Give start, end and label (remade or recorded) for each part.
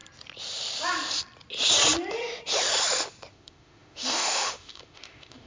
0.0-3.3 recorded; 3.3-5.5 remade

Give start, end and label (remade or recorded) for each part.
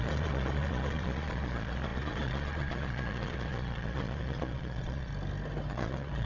0.0-5.1 remade; 5.1-5.7 recorded; 5.7-6.3 remade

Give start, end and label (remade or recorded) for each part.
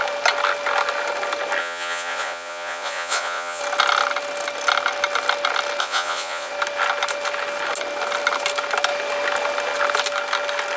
0.0-1.6 recorded; 1.6-3.6 remade; 3.6-5.8 recorded; 5.8-6.5 remade; 6.5-10.8 recorded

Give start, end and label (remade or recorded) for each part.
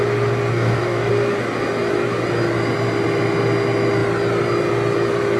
0.0-0.5 recorded; 0.5-1.1 remade; 1.1-5.4 recorded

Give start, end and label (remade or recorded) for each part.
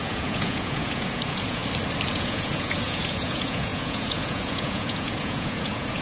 0.0-1.6 remade; 1.6-2.1 recorded; 2.1-6.0 remade